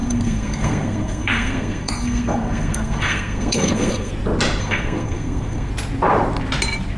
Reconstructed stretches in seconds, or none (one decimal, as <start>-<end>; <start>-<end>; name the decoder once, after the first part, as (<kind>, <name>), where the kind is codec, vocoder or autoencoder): 0.0-4.1 (codec, SNAC); 4.6-5.7